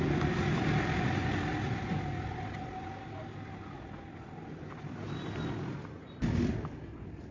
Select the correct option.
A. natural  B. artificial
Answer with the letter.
A